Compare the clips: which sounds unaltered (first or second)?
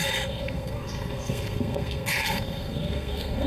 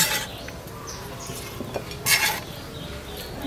second